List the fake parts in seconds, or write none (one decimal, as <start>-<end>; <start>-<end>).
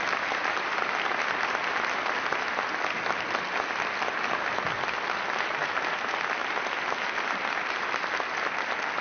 none